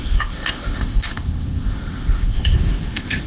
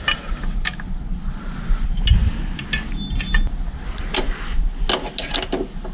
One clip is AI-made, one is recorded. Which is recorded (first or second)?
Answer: second